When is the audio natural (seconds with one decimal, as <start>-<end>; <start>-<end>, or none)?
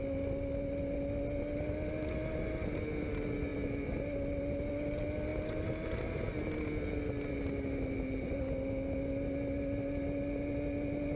0.0-11.2